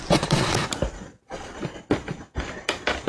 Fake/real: real